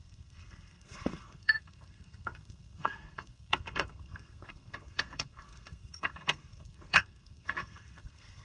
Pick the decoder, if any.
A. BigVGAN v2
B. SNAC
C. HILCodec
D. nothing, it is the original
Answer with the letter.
B